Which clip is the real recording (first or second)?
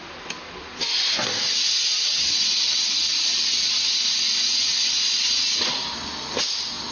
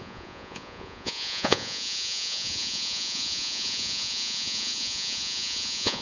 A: first